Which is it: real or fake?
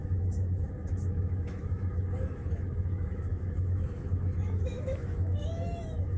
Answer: fake